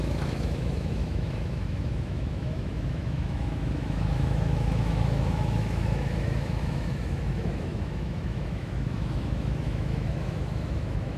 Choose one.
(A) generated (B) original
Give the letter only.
A